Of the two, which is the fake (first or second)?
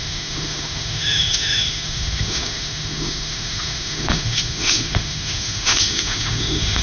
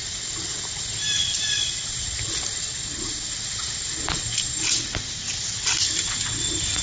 first